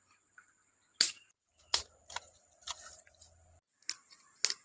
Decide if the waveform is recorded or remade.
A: recorded